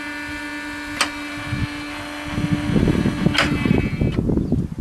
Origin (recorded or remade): recorded